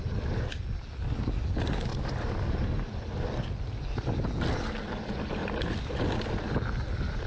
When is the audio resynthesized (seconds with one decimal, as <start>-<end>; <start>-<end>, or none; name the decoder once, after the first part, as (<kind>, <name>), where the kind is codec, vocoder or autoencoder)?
1.9-2.6 (vocoder, BigVGAN v2)